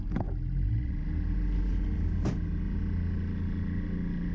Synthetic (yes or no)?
no